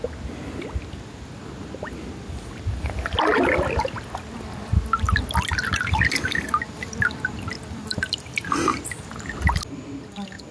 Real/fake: real